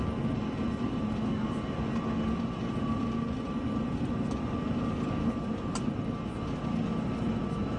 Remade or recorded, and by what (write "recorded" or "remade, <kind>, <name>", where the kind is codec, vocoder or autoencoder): recorded